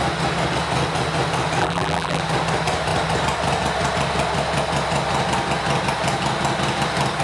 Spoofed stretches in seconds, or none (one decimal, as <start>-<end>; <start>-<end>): 1.6-2.2